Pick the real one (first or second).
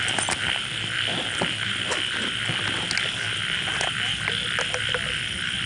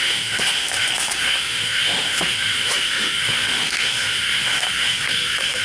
first